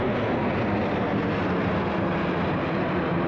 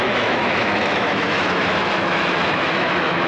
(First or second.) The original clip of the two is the first